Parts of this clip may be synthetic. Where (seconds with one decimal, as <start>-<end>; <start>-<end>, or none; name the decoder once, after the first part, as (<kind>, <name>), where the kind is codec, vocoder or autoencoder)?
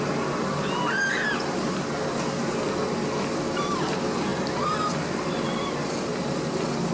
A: none